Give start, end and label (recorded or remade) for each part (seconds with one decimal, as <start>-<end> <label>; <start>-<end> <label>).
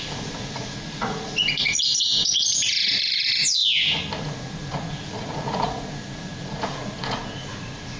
0.0-3.6 remade; 3.6-4.2 recorded; 4.2-8.0 remade